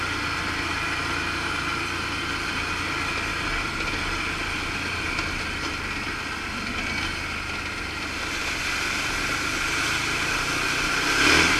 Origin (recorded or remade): recorded